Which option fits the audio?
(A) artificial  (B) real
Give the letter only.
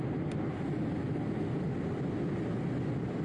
B